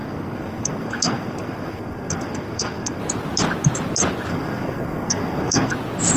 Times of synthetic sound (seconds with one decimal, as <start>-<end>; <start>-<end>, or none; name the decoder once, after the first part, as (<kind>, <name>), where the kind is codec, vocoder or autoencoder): 0.0-3.0 (codec, SNAC); 4.3-5.7